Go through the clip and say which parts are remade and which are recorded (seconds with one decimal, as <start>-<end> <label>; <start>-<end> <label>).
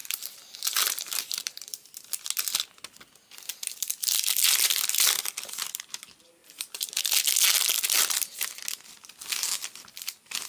0.0-1.5 remade; 1.5-6.4 recorded; 6.4-7.0 remade; 7.0-10.5 recorded